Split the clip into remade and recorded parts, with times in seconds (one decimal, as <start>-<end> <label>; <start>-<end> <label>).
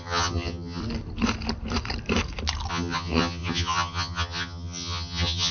0.0-0.8 remade; 0.8-2.7 recorded; 2.7-5.5 remade